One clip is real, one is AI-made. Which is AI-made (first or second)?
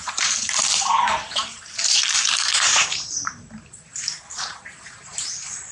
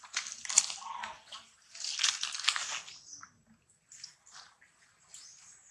first